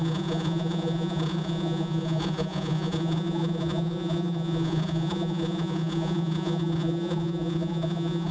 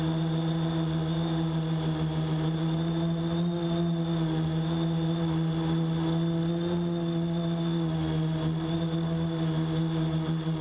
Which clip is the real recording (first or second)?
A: second